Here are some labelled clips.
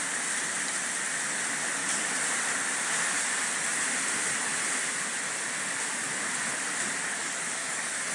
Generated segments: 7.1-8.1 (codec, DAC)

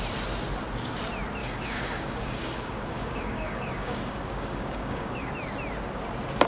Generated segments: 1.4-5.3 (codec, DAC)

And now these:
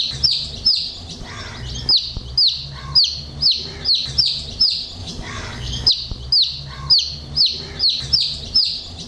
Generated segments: 5.0-5.9 (codec, DAC)